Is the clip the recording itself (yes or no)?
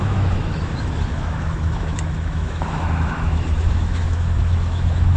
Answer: no